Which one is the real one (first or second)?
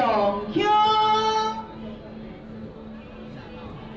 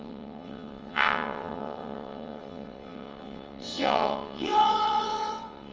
first